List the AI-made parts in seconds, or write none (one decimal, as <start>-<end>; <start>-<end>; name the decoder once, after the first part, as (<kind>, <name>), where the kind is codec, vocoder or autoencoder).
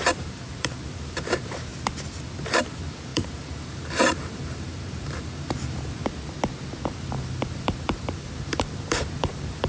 0.0-1.7 (vocoder, BigVGAN v2); 2.7-6.0; 6.8-9.7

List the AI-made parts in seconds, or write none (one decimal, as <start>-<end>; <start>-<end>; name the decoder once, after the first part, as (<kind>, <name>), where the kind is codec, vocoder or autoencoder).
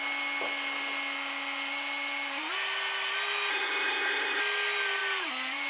3.5-4.4 (codec, SNAC)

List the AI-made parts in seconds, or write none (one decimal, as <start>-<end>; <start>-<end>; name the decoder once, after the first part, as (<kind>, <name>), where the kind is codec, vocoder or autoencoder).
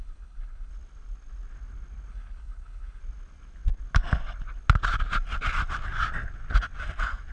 0.0-0.7 (codec, HILCodec); 2.1-3.0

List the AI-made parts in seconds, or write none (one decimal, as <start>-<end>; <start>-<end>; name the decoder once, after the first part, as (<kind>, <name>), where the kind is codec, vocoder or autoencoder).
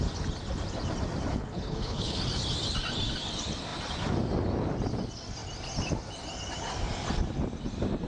1.3-2.2 (codec, HILCodec)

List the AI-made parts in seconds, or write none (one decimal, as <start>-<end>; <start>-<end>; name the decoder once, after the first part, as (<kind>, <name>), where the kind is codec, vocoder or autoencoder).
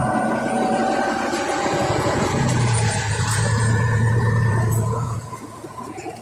0.0-6.2 (vocoder, Vocos)